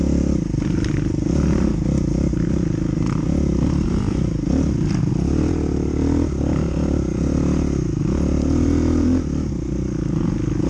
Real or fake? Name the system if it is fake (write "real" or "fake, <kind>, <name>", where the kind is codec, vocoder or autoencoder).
real